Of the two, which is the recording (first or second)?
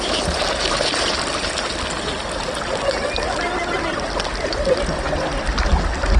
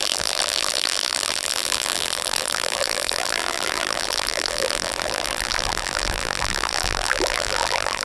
first